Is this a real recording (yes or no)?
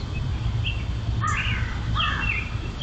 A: yes